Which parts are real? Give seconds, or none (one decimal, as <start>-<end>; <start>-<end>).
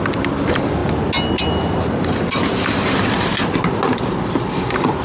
0.8-1.4; 3.3-4.2